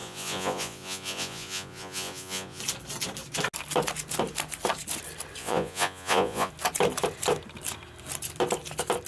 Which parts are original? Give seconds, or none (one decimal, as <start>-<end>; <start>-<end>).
2.6-5.4; 6.5-9.1